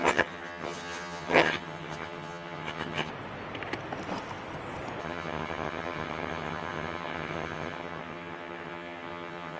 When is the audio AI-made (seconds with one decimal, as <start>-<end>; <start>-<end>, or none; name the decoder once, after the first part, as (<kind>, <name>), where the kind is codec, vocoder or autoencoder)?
0.0-3.1 (vocoder, HiFi-GAN); 5.0-9.6